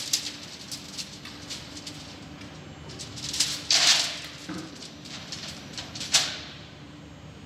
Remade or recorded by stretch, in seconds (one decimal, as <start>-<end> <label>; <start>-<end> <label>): 0.0-4.4 recorded; 4.4-7.0 remade; 7.0-7.5 recorded